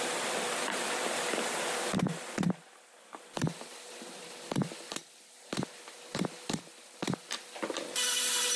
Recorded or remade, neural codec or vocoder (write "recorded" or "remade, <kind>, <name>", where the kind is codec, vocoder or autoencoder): remade, vocoder, BigVGAN v2